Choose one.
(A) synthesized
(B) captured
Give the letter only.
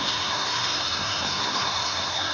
A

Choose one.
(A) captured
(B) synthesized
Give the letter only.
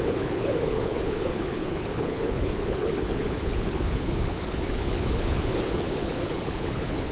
B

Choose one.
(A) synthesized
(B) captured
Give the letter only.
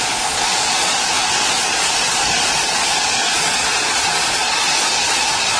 A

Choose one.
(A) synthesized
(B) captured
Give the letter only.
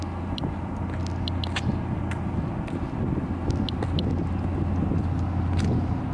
B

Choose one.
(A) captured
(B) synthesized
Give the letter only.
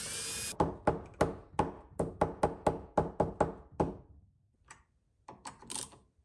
A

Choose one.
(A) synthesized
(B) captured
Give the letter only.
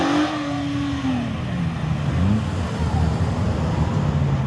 B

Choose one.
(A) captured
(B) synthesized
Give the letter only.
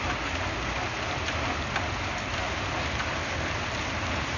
A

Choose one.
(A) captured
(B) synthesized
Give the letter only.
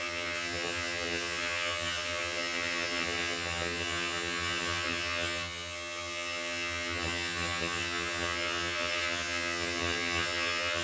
B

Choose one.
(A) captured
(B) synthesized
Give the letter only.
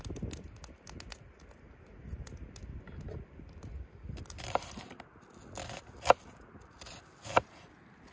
A